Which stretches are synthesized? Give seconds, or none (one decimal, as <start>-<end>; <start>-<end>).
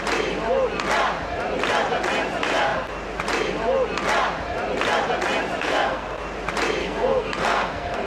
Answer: 5.6-6.2; 6.8-8.1